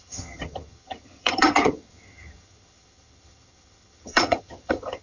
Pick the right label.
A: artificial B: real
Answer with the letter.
A